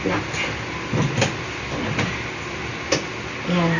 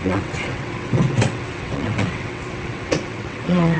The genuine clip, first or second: first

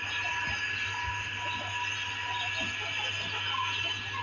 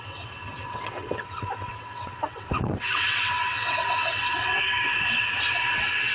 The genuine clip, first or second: first